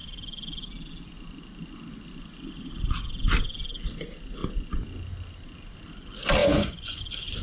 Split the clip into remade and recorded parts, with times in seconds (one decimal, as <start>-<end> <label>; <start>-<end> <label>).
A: 0.0-6.4 recorded; 6.4-7.0 remade; 7.0-7.4 recorded